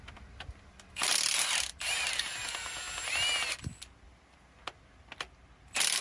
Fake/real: real